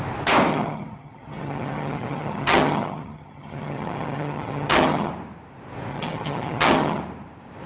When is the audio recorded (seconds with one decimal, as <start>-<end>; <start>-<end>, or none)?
0.0-0.5; 5.1-5.9; 7.0-7.7